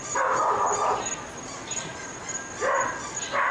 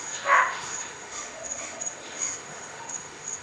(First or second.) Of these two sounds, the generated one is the second